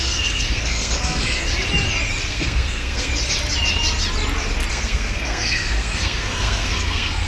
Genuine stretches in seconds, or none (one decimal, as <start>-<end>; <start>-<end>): 1.5-2.3; 3.1-4.7